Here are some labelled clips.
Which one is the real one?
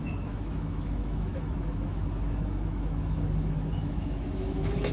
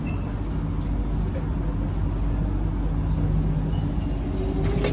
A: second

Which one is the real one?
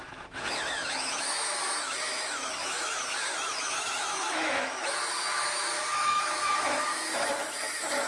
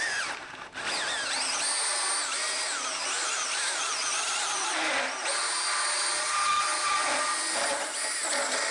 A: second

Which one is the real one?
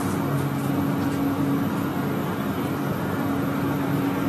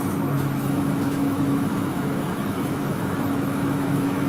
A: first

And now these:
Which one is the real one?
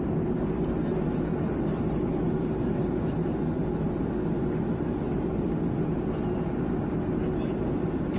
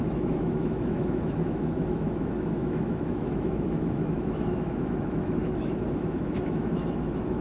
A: first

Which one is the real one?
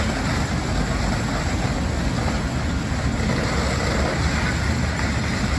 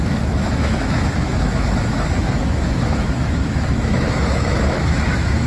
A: first